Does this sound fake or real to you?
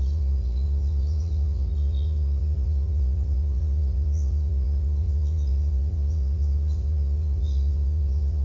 fake